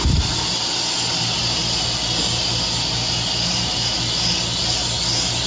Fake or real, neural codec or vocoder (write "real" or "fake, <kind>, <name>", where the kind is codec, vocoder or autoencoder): real